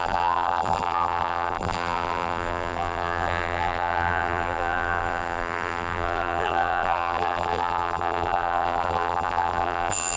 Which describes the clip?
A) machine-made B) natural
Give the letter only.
A